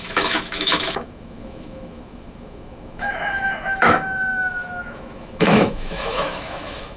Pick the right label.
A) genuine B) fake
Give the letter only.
B